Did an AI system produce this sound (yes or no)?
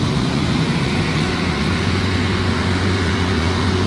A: yes